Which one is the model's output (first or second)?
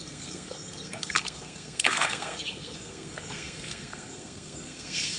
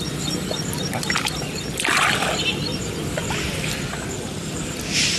first